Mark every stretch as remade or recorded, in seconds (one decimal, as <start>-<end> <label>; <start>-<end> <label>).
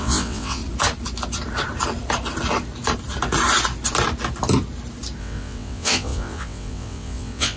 0.0-0.6 remade; 0.6-5.2 recorded; 5.2-7.6 remade